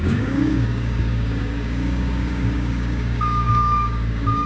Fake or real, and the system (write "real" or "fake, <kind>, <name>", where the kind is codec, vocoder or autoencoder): fake, codec, DAC